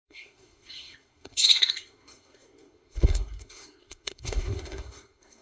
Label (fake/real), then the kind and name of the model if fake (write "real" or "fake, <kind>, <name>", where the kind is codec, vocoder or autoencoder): fake, codec, SNAC